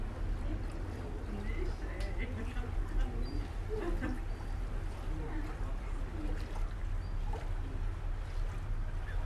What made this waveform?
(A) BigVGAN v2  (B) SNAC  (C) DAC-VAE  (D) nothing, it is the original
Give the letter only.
D